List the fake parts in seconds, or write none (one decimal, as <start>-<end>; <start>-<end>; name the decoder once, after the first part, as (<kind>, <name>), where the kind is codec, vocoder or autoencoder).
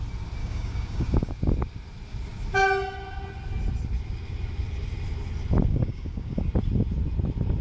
0.4-1.3 (codec, DAC); 5.7-6.5